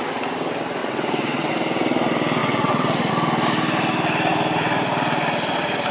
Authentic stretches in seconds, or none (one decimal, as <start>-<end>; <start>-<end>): 0.0-0.8; 1.5-2.4; 3.1-5.9

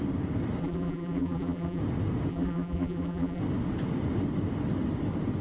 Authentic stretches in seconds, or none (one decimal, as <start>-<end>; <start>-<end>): 0.0-0.6; 1.8-2.3; 3.4-5.4

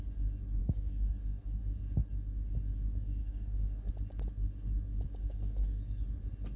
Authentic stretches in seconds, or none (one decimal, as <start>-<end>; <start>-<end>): 0.0-0.6; 1.6-3.2; 3.9-5.2; 5.8-6.6

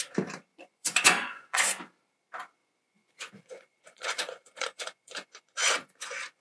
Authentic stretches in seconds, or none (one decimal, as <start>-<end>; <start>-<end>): 0.0-0.5; 1.8-2.6

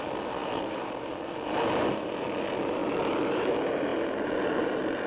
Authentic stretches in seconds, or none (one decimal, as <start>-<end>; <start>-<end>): 0.0-0.4; 1.1-2.8; 3.5-5.1

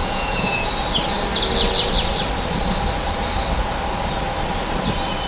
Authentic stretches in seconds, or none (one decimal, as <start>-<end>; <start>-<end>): 0.7-5.3

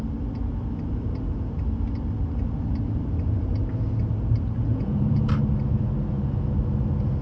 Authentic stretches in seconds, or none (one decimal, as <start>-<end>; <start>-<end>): 0.0-4.7; 5.3-6.1; 6.6-7.2